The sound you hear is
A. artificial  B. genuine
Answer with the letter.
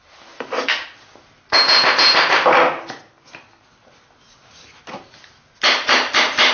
B